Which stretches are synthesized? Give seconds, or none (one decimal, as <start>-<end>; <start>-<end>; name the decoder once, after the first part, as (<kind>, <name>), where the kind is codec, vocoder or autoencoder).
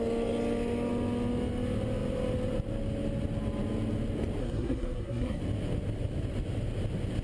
4.4-5.4 (codec, SNAC)